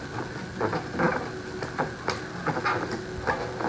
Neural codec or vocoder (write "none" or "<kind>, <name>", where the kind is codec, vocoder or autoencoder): none